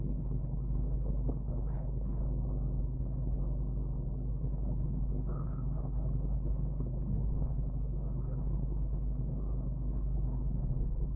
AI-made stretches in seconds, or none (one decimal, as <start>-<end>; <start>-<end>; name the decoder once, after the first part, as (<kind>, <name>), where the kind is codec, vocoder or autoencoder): 0.0-2.2 (codec, HILCodec); 2.8-3.4; 4.3-11.2